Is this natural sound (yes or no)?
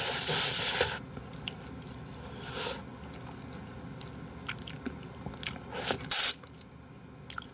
yes